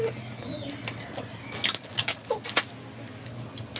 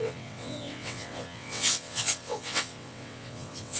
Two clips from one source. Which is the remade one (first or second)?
second